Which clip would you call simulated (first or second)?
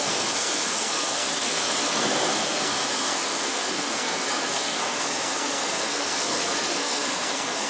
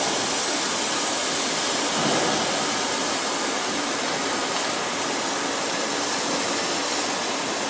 first